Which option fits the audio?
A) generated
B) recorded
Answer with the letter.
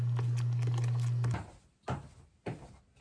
B